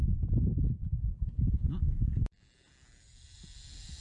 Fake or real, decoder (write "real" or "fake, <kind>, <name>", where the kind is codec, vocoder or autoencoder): fake, vocoder, BigVGAN v2